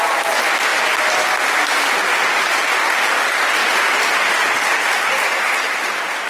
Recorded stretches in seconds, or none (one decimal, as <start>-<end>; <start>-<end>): 0.0-3.6